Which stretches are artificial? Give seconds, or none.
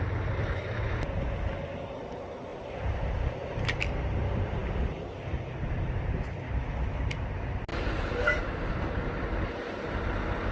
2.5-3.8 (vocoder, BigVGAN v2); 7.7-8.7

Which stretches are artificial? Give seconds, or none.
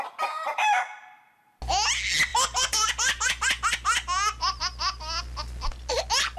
none